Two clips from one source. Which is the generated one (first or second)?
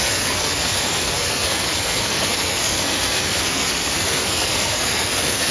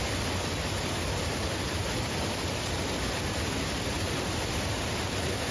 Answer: first